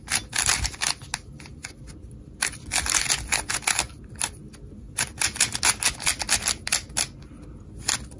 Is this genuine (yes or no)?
yes